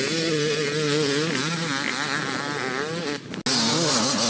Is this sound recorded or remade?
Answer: recorded